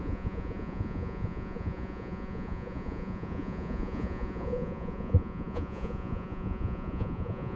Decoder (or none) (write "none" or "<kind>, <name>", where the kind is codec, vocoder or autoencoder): vocoder, Vocos